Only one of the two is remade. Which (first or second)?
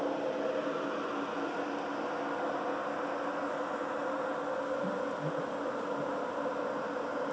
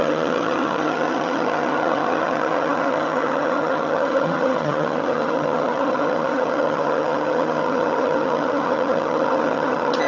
second